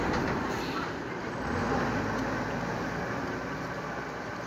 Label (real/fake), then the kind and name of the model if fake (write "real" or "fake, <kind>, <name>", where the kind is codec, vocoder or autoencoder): real